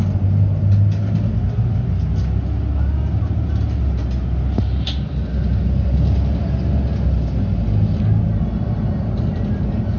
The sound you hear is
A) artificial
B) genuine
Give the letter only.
B